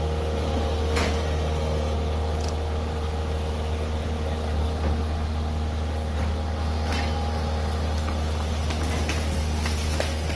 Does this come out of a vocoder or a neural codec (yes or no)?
no